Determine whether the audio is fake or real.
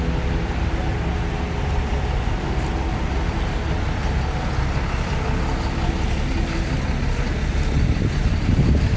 real